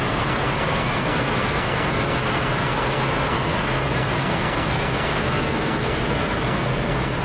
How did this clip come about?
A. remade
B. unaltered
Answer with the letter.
A